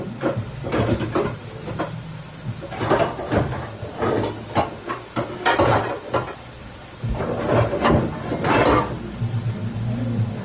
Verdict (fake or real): real